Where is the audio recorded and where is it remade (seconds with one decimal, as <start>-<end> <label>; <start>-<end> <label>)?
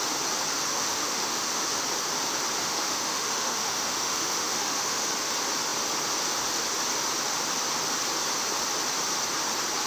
0.0-0.7 recorded; 0.7-1.8 remade; 1.8-2.6 recorded; 2.6-5.1 remade; 5.1-9.9 recorded